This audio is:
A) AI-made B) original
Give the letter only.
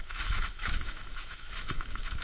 A